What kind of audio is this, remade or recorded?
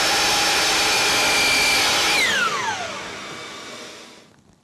recorded